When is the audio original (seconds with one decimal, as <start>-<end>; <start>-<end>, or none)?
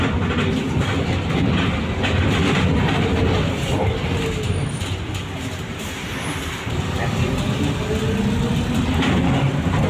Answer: 0.0-9.9